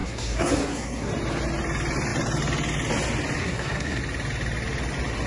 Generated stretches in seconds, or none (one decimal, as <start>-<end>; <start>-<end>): 0.0-1.1; 3.4-4.0